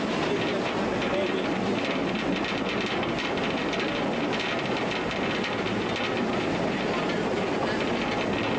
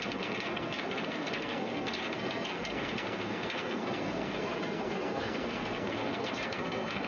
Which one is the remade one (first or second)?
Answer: second